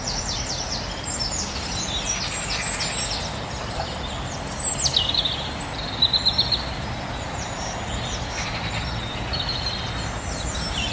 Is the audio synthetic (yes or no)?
no